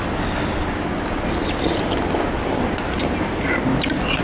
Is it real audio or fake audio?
real